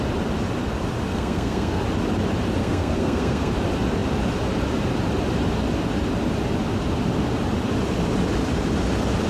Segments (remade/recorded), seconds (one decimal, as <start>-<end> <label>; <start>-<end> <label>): 0.0-1.1 recorded; 1.1-1.8 remade; 1.8-2.6 recorded; 2.6-3.5 remade; 3.5-9.3 recorded